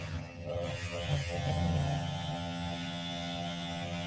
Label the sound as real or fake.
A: fake